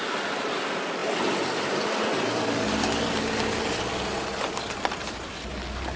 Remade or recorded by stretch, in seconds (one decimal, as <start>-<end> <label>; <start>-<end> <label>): 0.0-6.0 recorded

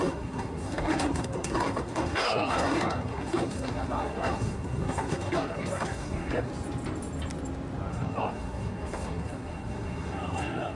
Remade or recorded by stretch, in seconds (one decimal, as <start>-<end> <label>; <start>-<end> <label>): 0.0-6.5 remade; 6.5-7.9 recorded; 7.9-10.7 remade

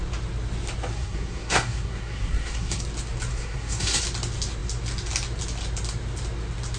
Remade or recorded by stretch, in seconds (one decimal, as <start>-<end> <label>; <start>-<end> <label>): 0.0-0.9 recorded; 0.9-2.8 remade; 2.8-3.3 recorded; 3.3-4.0 remade; 4.0-6.8 recorded

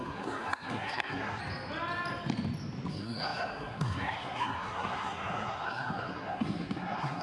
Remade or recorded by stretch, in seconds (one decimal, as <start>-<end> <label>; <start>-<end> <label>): 0.0-1.4 remade; 1.4-2.9 recorded; 2.9-7.2 remade

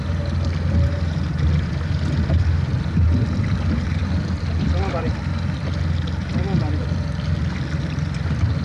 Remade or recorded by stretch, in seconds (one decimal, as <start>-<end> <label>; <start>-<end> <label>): 0.0-8.6 recorded

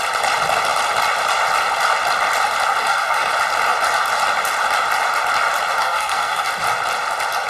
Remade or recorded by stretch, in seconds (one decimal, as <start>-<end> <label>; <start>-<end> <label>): 0.0-2.8 recorded; 2.8-3.3 remade; 3.3-5.8 recorded; 5.8-6.5 remade; 6.5-7.5 recorded